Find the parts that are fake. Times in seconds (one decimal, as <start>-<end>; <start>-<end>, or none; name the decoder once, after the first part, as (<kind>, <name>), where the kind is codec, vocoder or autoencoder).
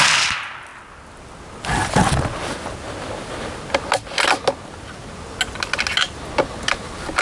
none